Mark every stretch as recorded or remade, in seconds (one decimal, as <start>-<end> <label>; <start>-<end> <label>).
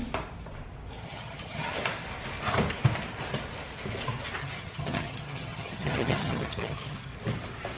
0.0-1.0 recorded; 1.0-1.7 remade; 1.7-4.4 recorded; 4.4-7.1 remade; 7.1-7.8 recorded